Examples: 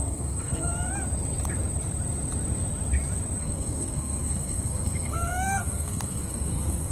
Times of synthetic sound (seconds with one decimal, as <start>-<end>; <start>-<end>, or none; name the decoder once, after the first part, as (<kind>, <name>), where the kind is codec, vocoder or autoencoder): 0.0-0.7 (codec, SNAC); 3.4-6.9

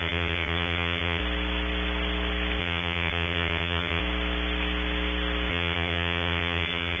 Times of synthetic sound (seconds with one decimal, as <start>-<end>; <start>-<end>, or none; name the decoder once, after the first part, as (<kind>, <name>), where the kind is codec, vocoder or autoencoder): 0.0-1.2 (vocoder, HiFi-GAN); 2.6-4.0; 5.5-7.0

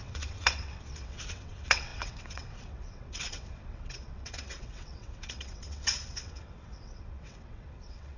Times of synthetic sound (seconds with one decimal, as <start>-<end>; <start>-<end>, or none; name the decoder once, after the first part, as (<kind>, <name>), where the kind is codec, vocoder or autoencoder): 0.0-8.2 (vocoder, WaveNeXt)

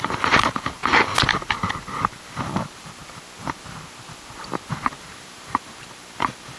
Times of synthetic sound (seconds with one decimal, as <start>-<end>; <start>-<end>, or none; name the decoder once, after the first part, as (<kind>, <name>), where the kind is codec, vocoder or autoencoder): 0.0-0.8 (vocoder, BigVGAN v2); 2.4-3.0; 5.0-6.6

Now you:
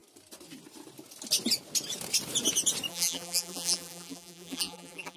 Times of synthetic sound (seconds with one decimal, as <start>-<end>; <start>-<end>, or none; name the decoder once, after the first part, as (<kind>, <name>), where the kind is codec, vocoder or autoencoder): 2.9-5.2 (vocoder, BigVGAN v2)